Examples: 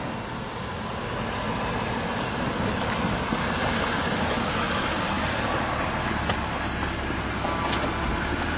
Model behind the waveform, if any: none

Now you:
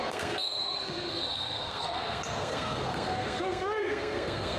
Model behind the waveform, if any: codec, SNAC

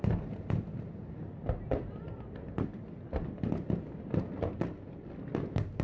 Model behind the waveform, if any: none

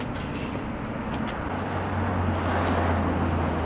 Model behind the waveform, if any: none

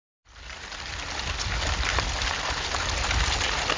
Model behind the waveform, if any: none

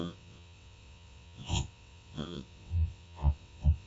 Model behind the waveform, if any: vocoder, WaveNeXt